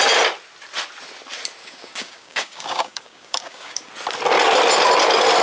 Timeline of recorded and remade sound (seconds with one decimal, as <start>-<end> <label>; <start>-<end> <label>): 0.0-1.6 recorded; 1.6-3.9 remade; 3.9-5.4 recorded